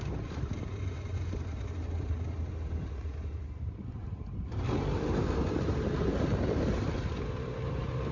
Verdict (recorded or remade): remade